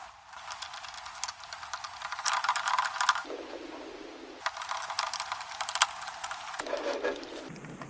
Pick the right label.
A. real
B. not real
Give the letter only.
A